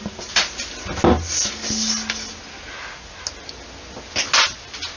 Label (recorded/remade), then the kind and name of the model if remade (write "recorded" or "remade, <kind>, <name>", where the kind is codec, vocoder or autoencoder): recorded